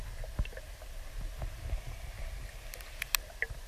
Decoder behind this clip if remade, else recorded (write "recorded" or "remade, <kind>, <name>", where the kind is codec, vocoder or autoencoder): recorded